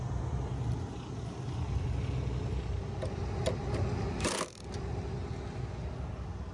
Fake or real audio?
real